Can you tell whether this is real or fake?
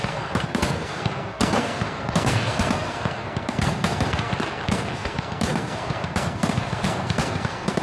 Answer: fake